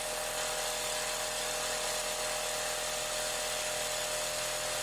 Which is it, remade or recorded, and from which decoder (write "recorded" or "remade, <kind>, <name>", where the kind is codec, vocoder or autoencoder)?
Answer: recorded